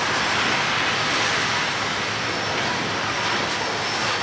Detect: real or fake real